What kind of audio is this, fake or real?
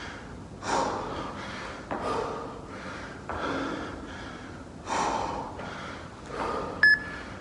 real